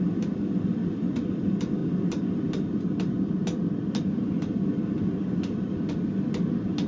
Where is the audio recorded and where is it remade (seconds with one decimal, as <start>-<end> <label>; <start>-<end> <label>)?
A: 0.0-6.9 recorded